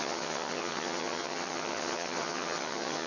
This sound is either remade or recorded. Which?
remade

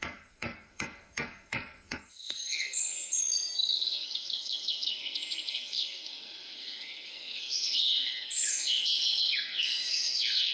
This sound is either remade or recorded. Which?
remade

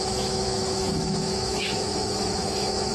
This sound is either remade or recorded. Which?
remade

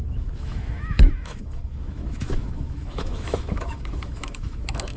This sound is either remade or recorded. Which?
remade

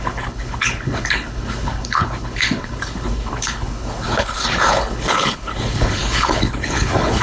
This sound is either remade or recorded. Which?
remade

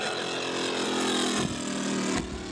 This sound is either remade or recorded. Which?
recorded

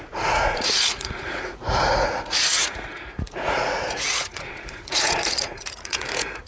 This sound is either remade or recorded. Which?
remade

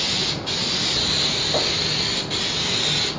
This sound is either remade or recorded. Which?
recorded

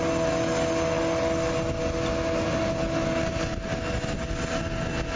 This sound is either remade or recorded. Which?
recorded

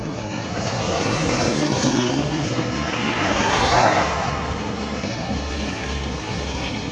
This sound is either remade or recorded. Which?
remade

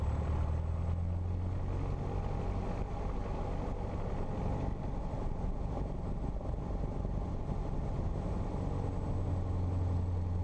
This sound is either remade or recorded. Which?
recorded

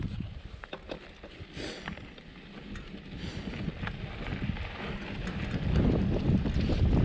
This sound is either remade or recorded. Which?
recorded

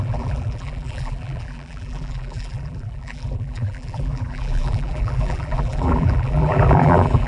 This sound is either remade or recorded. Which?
remade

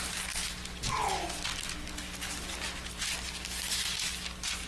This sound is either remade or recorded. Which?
recorded